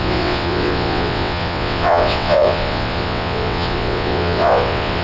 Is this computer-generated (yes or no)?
yes